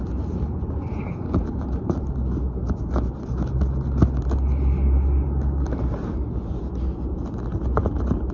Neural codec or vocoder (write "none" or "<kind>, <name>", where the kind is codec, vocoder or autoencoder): none